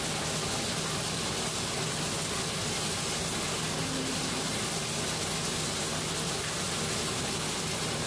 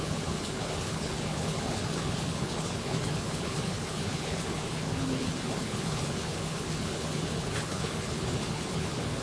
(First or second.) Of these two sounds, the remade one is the second